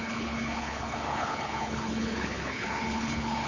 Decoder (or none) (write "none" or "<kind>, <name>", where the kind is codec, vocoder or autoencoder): codec, HILCodec